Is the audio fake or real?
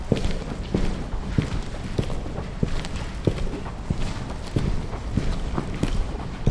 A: real